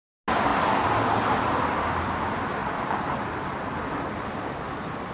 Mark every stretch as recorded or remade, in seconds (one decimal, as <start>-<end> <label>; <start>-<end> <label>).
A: 0.0-0.5 recorded; 0.5-1.4 remade; 1.4-2.6 recorded; 2.6-5.1 remade